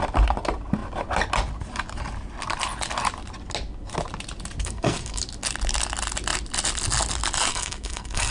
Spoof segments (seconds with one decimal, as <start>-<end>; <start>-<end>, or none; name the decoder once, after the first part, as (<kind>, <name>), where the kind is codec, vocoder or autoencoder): 4.6-5.2 (codec, SNAC); 7.5-8.3